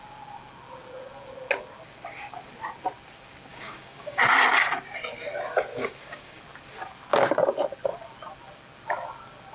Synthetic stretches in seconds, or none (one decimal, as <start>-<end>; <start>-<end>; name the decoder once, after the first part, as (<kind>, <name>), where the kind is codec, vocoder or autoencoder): 3.5-4.2 (codec, DAC); 5.7-6.4